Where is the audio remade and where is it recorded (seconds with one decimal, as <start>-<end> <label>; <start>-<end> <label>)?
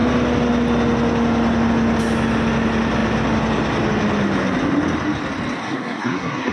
0.0-5.6 recorded; 5.6-6.5 remade